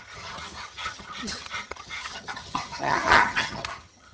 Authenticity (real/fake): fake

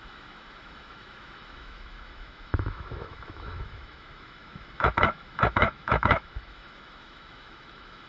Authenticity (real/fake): fake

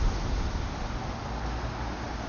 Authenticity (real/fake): real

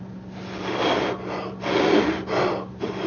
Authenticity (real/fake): real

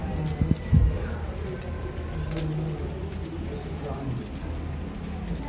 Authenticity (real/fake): real